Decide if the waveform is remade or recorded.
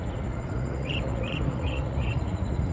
remade